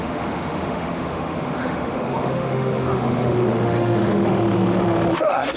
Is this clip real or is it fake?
fake